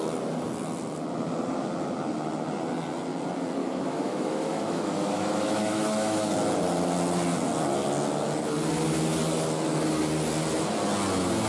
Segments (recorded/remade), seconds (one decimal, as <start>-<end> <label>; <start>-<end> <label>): 0.0-3.6 recorded; 3.6-6.3 remade; 6.3-11.5 recorded